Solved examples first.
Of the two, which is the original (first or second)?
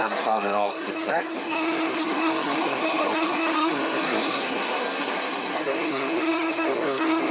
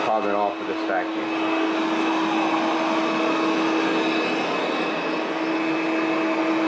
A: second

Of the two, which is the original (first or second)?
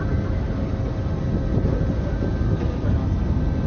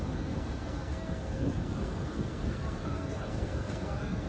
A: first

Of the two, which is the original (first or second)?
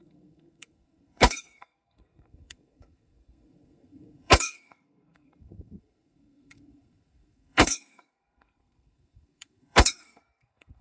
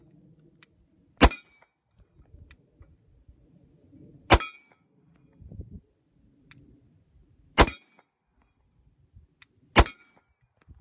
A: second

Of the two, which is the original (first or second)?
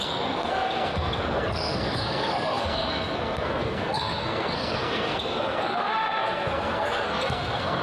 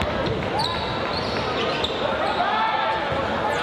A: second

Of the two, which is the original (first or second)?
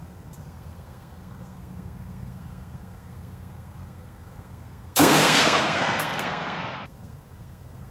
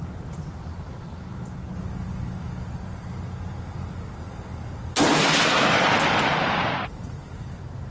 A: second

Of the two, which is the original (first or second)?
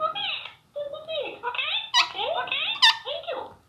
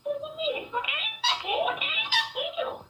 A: first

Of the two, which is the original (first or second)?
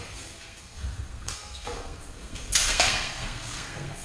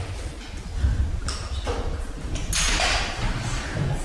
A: second